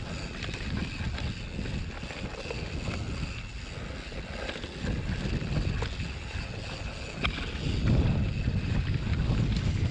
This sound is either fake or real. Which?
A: real